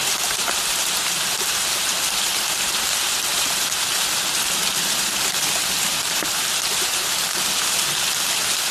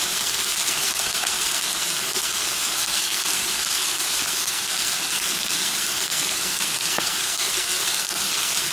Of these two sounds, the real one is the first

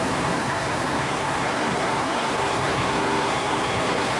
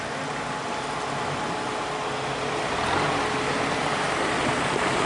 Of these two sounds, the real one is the second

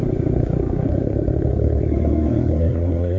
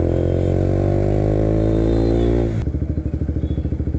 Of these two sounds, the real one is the second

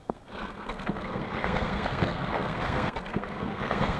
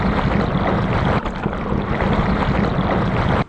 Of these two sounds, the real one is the second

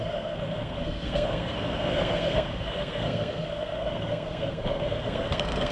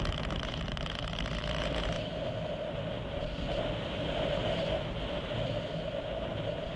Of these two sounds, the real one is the second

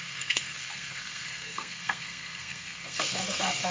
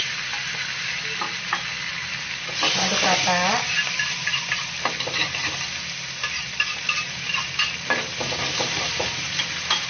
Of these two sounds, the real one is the second